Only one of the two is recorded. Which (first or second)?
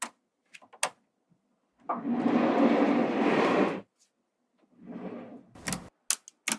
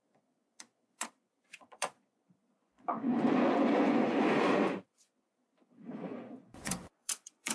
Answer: first